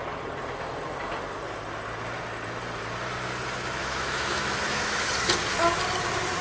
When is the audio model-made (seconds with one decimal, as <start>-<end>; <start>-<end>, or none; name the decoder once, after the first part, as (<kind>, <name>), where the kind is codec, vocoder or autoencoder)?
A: 3.8-5.1 (autoencoder, DAC-VAE)